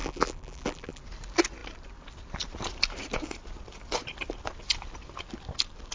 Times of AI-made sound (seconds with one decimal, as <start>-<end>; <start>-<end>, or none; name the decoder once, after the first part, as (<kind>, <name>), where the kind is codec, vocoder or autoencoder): 0.0-1.0 (vocoder, BigVGAN v2)